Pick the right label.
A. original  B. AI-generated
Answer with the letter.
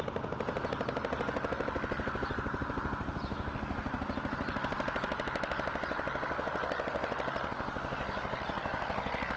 A